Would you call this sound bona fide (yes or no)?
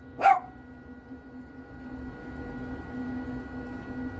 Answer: yes